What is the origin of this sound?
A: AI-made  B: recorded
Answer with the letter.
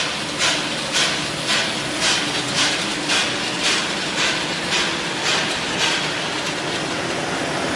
B